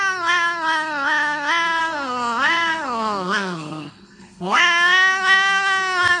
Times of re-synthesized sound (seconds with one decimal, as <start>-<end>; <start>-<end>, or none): 1.8-4.6